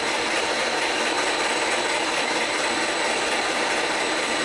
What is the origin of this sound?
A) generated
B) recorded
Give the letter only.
A